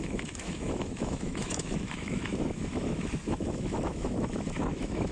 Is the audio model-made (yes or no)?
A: yes